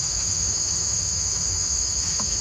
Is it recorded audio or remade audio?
remade